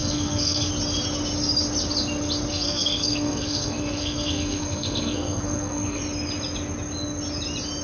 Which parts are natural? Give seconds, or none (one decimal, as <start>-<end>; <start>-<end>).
0.7-2.5; 6.0-7.8